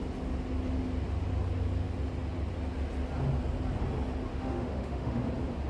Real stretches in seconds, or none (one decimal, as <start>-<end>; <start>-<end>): 0.0-4.3; 5.3-5.7